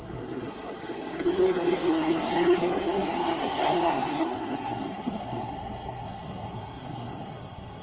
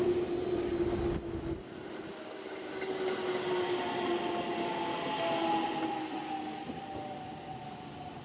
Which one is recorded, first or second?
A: second